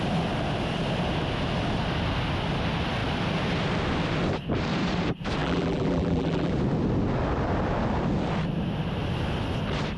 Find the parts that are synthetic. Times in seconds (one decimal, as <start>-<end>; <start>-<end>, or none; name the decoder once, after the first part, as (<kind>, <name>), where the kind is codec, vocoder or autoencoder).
5.4-6.5 (vocoder, BigVGAN v2)

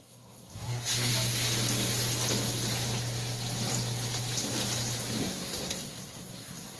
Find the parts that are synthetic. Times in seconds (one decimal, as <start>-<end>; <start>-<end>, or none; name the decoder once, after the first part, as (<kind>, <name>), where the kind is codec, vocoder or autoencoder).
0.0-1.1 (codec, SNAC); 5.2-6.8